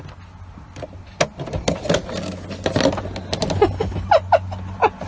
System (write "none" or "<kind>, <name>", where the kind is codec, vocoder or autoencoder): none